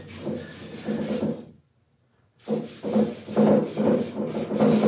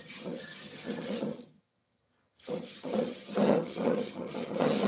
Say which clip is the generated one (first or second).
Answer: second